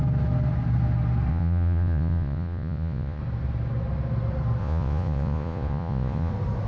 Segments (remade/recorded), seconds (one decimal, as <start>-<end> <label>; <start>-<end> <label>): 0.0-1.3 recorded; 1.3-3.2 remade; 3.2-4.6 recorded; 4.6-6.3 remade; 6.3-6.7 recorded